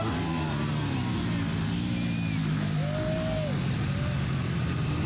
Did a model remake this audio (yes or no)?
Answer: no